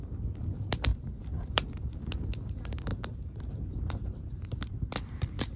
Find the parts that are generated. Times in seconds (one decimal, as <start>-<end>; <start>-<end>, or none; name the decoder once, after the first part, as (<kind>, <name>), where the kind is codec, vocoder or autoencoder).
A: 0.9-2.1 (vocoder, BigVGAN v2); 2.9-4.9